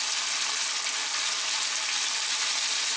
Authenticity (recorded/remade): recorded